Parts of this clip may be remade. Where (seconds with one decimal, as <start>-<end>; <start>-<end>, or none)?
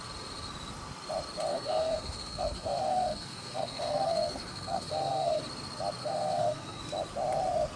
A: 1.5-5.4; 6.0-6.8